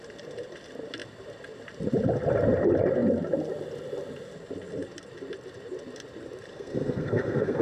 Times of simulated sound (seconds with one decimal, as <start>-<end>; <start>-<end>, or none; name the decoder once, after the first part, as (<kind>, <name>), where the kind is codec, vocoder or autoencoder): 6.5-7.6 (codec, SNAC)